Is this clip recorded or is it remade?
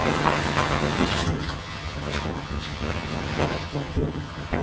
remade